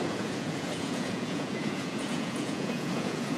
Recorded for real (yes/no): no